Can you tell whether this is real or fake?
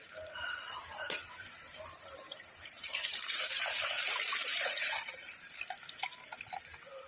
fake